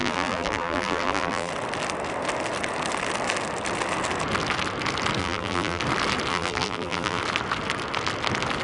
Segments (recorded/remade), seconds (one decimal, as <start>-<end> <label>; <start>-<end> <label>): 0.0-1.5 remade; 1.5-5.2 recorded; 5.2-5.8 remade; 5.8-6.3 recorded; 6.3-7.2 remade; 7.2-8.6 recorded